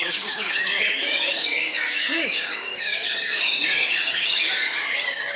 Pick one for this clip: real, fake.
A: fake